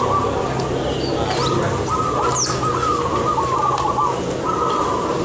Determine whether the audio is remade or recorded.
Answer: recorded